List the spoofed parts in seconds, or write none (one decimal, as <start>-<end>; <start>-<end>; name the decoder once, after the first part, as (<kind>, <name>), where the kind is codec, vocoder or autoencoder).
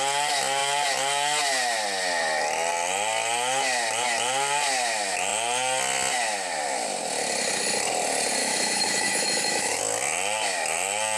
8.4-9.8 (autoencoder, DAC-VAE)